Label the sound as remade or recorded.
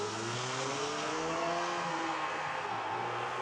remade